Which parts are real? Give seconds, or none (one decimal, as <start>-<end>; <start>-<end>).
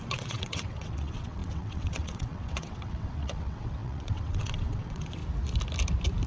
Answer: 5.2-6.3